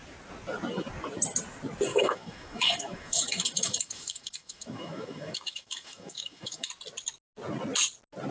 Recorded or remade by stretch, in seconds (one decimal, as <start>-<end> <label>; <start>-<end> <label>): 0.0-1.9 recorded; 1.9-6.7 remade; 6.7-8.3 recorded